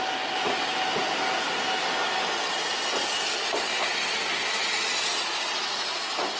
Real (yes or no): yes